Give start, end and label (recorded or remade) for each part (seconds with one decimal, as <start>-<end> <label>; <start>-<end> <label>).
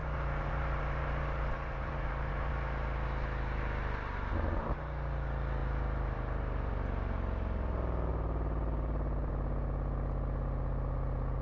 0.0-2.5 remade; 2.5-5.6 recorded; 5.6-6.7 remade; 6.7-8.1 recorded; 8.1-9.3 remade; 9.3-11.4 recorded